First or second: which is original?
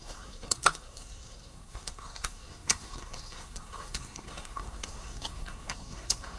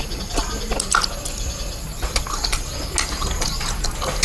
second